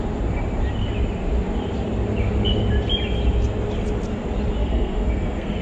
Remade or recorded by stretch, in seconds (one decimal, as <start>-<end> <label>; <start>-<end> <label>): 0.0-4.6 recorded; 4.6-5.6 remade